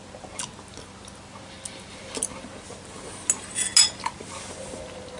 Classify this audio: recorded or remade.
recorded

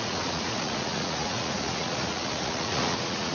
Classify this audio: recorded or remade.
remade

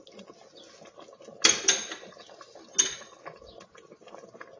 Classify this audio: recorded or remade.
recorded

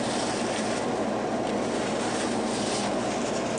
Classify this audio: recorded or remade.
recorded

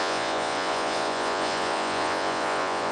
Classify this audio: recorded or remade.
remade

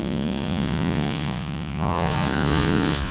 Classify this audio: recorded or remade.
remade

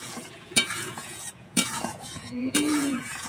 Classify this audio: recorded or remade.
remade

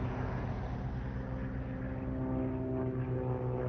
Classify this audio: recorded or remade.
recorded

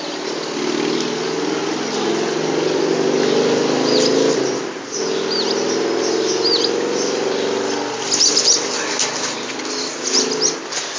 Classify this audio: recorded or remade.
recorded